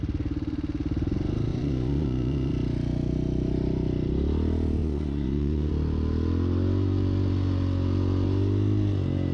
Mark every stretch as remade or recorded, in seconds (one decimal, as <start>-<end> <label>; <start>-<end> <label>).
0.0-1.5 recorded; 1.5-2.5 remade; 2.5-4.8 recorded; 4.8-5.7 remade; 5.7-9.3 recorded